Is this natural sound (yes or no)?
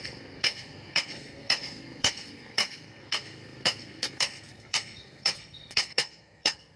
no